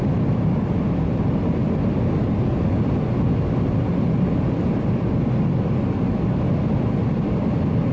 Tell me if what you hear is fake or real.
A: real